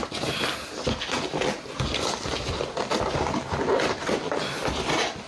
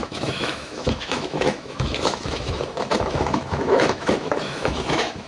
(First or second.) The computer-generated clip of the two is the second